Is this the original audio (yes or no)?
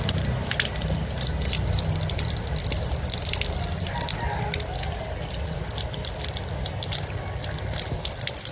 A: yes